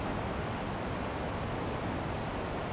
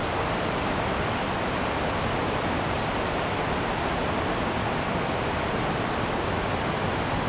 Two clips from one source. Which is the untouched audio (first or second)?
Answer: first